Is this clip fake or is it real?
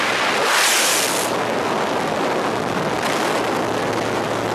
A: real